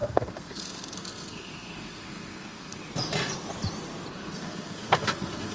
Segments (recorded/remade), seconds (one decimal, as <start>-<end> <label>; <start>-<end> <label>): 0.0-2.8 remade; 2.8-4.1 recorded; 4.1-5.5 remade